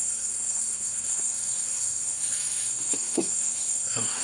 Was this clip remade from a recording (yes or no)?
yes